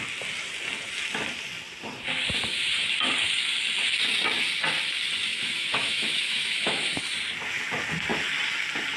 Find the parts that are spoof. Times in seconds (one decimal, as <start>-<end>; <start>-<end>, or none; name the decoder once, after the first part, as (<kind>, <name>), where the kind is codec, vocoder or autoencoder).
5.3-7.0 (autoencoder, DAC-VAE)